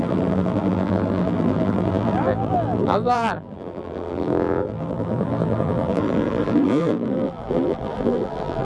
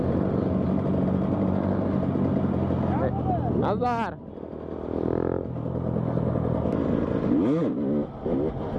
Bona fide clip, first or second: second